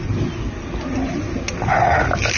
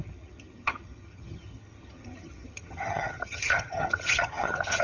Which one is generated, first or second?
second